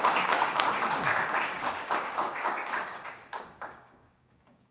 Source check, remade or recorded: remade